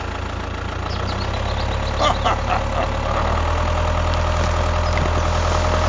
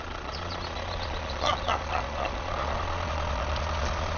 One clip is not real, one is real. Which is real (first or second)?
first